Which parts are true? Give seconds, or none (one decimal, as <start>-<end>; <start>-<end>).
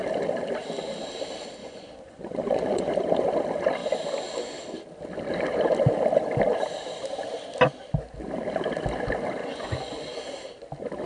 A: 0.0-1.6; 2.9-9.4; 10.2-11.1